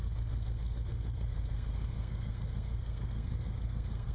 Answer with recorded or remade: remade